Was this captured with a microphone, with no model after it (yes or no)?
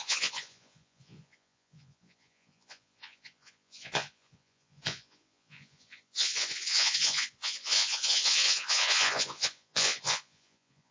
no